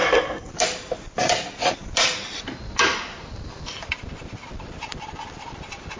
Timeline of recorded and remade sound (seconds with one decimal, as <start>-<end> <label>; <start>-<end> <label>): 0.0-0.5 remade; 0.5-6.0 recorded